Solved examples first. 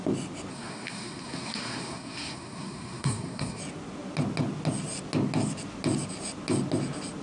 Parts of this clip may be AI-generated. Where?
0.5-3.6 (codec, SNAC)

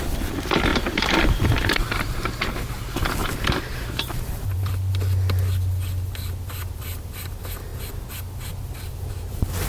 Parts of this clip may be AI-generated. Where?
0.7-2.4 (vocoder, BigVGAN v2); 3.2-4.7

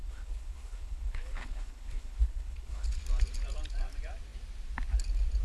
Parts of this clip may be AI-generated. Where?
0.0-3.0 (codec, HILCodec)

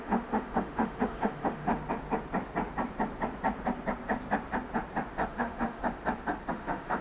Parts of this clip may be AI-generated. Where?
0.0-1.7 (autoencoder, DAC-VAE); 5.3-5.8; 6.5-7.0

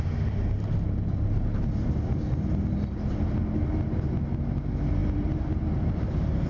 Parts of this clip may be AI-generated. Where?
5.0-6.5 (vocoder, BigVGAN v2)

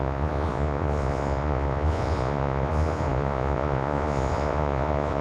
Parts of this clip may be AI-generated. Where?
0.0-5.2 (vocoder, Vocos)